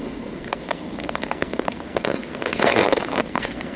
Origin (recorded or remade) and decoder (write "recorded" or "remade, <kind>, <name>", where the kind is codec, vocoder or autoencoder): remade, codec, SNAC